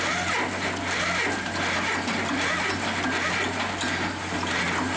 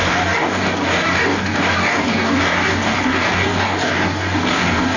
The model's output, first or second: second